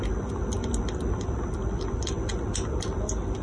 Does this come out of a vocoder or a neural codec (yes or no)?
no